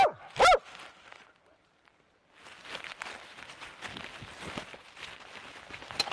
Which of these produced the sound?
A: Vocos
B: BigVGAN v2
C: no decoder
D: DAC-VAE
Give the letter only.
C